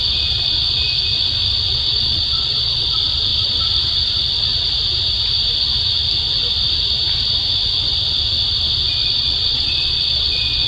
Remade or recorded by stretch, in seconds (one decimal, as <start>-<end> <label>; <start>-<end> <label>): 0.0-1.7 recorded; 1.7-2.9 remade; 2.9-9.0 recorded; 9.0-10.7 remade